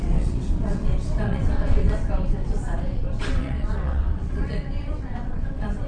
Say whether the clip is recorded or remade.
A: remade